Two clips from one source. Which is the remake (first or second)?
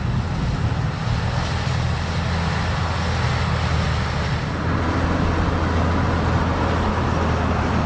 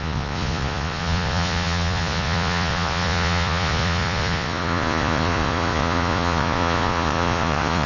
second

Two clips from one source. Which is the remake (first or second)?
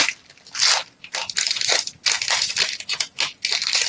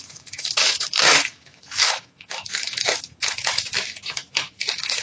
second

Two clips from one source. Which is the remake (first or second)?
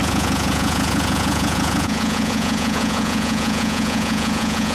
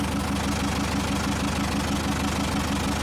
first